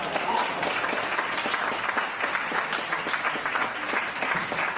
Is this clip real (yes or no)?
yes